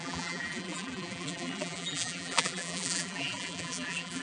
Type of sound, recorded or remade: remade